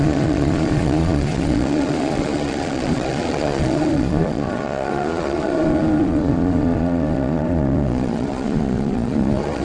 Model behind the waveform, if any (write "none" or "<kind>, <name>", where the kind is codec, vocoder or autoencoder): vocoder, Vocos